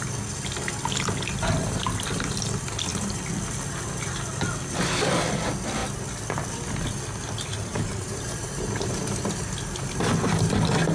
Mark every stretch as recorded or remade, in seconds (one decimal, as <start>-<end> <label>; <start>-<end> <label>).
0.0-7.6 recorded; 7.6-9.4 remade; 9.4-10.9 recorded